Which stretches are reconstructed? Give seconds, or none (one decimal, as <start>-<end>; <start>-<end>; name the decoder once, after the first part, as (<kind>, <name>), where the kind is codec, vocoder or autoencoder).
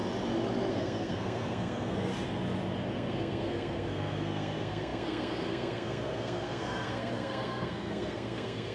0.7-2.1 (codec, SNAC); 2.9-8.7